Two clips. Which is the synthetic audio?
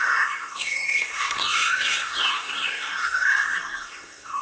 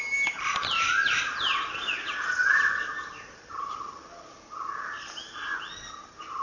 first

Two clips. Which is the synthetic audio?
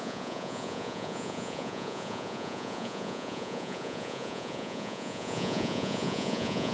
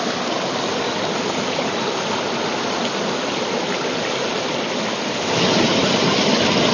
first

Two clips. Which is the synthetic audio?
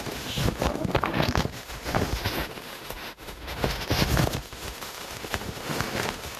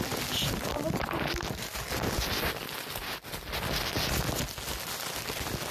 first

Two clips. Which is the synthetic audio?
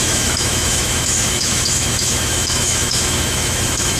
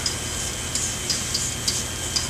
first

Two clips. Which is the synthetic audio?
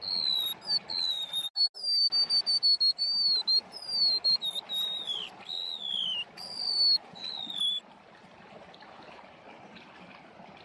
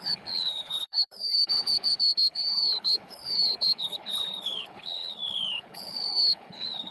second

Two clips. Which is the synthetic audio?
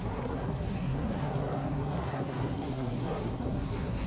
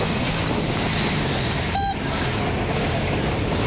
first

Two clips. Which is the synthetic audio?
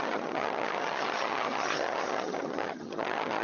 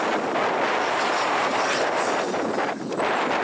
first